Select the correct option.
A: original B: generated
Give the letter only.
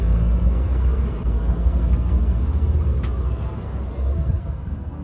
B